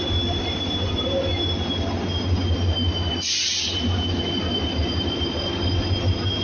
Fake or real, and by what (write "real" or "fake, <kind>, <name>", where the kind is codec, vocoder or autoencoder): real